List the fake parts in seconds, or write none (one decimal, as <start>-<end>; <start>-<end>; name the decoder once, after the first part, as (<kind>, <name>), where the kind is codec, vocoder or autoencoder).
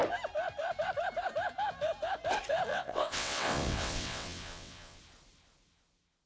2.7-5.0 (vocoder, WaveNeXt)